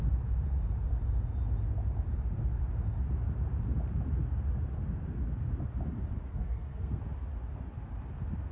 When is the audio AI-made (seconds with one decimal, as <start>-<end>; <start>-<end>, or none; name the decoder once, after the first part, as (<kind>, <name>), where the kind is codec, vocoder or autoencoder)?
6.3-7.0 (codec, SNAC)